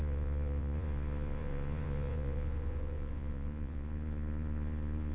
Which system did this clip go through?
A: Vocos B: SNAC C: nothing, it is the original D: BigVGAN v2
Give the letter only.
A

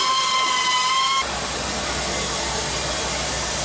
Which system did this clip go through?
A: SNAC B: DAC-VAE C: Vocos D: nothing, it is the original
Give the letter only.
D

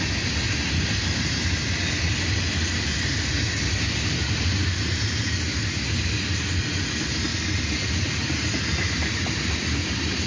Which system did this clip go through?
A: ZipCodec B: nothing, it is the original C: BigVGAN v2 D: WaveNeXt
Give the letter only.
B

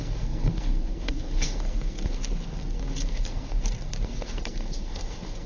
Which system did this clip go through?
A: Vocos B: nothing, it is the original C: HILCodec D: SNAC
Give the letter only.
D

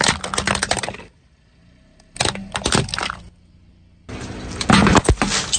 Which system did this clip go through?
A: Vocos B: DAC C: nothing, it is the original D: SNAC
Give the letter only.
C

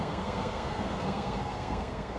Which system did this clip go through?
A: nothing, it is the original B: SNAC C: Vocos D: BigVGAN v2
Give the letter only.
B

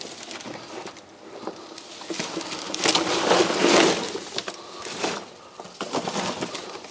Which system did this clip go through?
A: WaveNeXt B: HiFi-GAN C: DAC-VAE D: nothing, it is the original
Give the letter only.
D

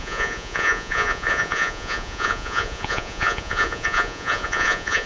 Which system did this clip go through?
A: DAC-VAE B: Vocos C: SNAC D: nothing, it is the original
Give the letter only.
B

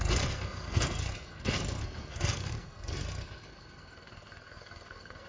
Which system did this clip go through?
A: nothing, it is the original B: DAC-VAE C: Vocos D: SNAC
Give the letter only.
D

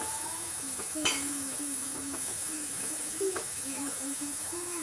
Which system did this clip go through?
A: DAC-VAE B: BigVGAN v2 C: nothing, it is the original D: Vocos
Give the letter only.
A